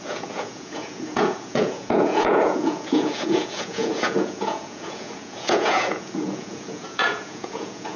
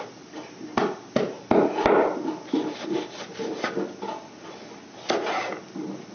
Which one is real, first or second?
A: second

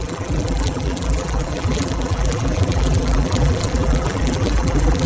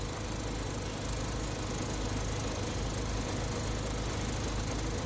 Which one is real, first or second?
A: second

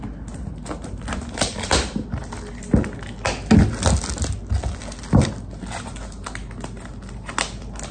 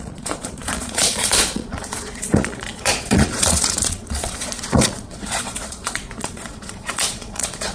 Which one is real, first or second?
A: first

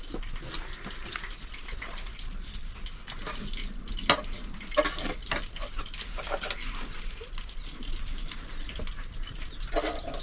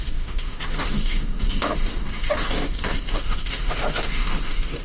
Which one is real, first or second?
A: first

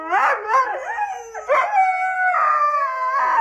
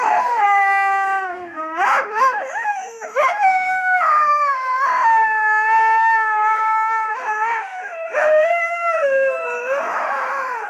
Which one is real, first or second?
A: first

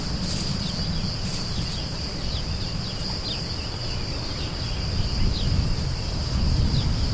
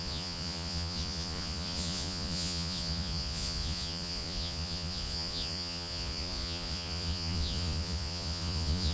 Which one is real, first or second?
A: first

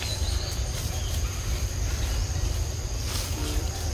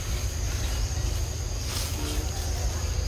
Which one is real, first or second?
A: second